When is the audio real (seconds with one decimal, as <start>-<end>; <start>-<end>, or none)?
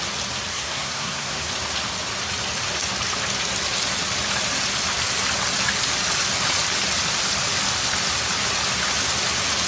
0.0-0.5; 1.5-9.7